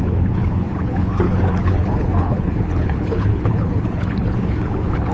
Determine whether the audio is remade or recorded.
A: remade